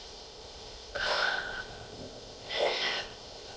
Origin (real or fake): fake